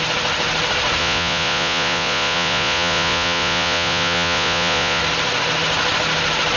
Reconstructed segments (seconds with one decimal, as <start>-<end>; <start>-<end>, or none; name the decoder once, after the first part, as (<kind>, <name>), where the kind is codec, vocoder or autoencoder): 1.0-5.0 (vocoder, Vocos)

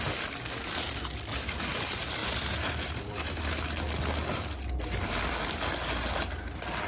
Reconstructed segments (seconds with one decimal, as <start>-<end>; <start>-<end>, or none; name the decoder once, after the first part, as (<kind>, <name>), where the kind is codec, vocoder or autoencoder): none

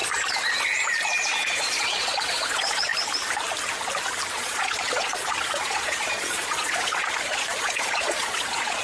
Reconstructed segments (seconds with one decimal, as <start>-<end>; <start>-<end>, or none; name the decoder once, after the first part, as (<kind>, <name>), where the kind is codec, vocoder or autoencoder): 1.6-2.9 (vocoder, Vocos); 4.3-8.8

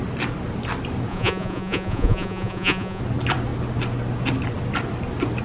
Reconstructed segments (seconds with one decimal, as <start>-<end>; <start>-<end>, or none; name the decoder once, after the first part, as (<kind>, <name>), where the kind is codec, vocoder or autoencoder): 1.1-3.0 (vocoder, Vocos)

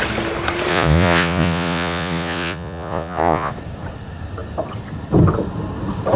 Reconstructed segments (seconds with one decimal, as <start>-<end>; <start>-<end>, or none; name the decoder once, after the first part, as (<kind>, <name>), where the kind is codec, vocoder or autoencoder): 0.7-3.5 (vocoder, Vocos)

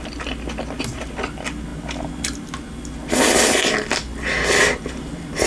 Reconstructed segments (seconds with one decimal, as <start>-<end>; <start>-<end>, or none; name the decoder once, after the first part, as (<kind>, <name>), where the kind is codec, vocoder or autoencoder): none

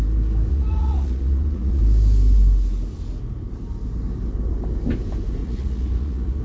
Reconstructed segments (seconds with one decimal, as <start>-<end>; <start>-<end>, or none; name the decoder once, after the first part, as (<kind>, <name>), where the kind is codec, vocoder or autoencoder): 0.5-1.8 (vocoder, Vocos); 5.4-6.4